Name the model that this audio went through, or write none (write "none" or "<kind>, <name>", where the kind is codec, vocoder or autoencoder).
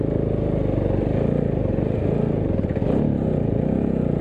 none